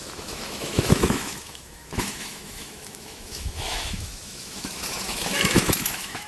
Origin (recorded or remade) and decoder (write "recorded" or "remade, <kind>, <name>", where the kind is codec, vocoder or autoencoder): remade, autoencoder, DAC-VAE